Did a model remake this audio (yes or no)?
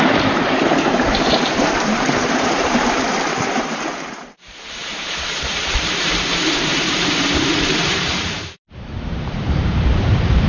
yes